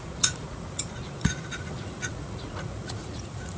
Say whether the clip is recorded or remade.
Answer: remade